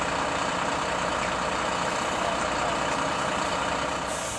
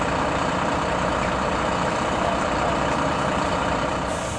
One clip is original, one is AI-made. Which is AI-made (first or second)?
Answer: second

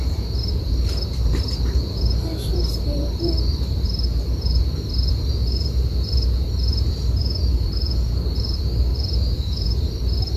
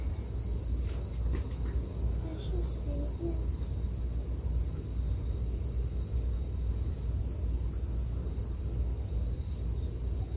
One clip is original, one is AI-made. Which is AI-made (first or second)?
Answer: first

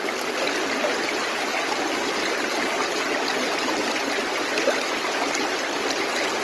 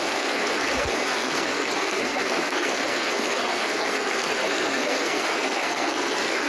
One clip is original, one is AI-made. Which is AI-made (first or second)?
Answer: second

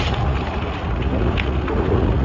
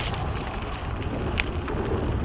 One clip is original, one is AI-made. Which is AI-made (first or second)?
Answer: first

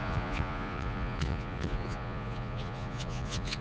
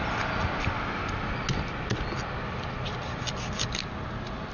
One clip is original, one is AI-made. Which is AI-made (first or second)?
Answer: first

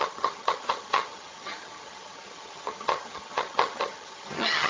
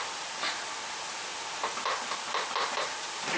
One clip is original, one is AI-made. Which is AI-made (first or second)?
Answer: first